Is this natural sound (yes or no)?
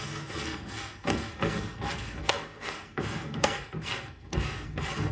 no